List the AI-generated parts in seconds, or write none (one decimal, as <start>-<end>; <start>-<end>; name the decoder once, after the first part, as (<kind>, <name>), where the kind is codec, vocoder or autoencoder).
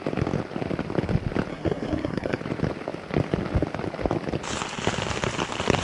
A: 1.5-2.4 (codec, SNAC)